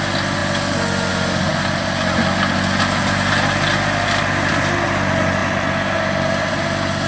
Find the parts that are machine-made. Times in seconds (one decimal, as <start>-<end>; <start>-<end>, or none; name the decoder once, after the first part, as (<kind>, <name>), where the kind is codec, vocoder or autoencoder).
none